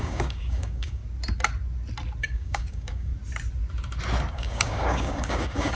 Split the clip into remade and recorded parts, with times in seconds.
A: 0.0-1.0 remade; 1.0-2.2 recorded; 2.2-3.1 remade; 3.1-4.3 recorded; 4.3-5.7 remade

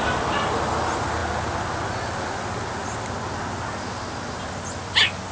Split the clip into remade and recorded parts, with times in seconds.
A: 0.0-5.3 recorded

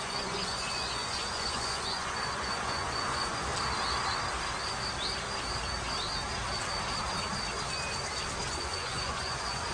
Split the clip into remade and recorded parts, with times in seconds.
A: 0.0-3.5 remade; 3.5-8.5 recorded; 8.5-9.7 remade

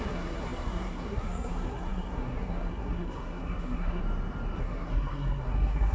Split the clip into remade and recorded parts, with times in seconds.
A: 0.0-4.0 remade; 4.0-4.6 recorded; 4.6-5.9 remade